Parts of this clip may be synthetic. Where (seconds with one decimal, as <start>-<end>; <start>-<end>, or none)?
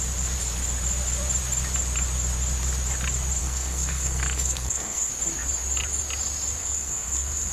3.4-5.1; 6.6-7.5